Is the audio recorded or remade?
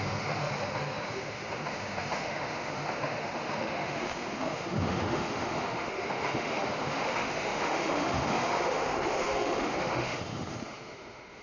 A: remade